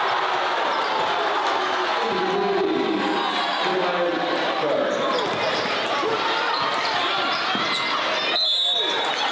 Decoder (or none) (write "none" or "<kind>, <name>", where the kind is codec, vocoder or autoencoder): none